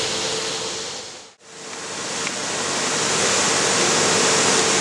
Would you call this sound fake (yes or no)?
no